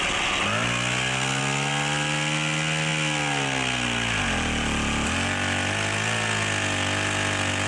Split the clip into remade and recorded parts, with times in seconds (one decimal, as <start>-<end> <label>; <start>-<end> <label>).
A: 0.0-7.7 recorded